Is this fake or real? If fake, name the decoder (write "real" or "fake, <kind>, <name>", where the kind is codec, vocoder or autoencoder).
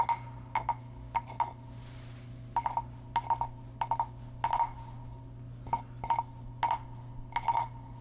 real